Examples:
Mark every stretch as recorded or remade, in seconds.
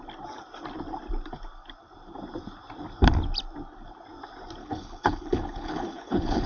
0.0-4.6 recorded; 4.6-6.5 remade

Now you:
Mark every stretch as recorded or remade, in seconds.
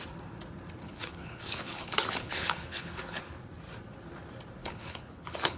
0.0-0.8 recorded; 0.8-3.2 remade; 3.2-4.6 recorded; 4.6-5.6 remade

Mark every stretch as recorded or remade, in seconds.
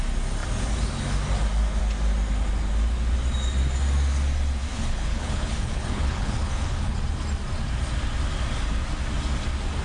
0.0-4.7 recorded; 4.7-7.0 remade; 7.0-9.8 recorded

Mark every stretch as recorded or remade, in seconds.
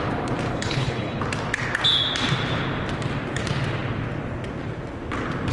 0.0-0.5 recorded; 0.5-1.2 remade; 1.2-5.5 recorded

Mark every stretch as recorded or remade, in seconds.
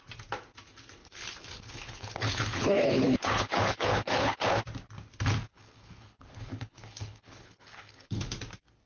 0.0-1.0 recorded; 1.0-4.6 remade; 4.6-5.5 recorded; 5.5-8.4 remade; 8.4-8.9 recorded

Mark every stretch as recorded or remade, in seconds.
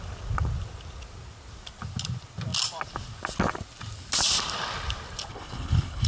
0.0-5.3 recorded; 5.3-6.1 remade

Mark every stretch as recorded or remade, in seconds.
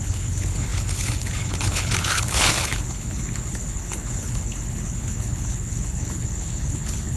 0.0-7.2 remade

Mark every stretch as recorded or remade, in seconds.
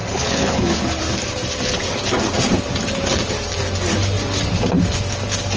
0.0-1.0 remade; 1.0-5.6 recorded